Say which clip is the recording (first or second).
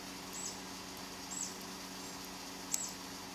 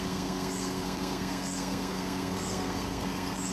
first